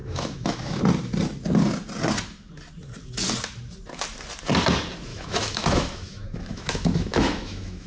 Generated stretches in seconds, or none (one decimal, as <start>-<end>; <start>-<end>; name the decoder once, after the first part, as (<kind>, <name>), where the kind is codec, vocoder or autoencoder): 0.0-0.8 (autoencoder, DAC-VAE); 5.1-7.9